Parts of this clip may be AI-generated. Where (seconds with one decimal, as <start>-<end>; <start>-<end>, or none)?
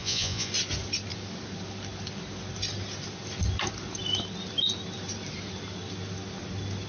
0.0-0.5